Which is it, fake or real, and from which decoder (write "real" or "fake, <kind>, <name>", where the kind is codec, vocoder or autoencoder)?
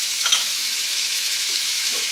fake, autoencoder, DAC-VAE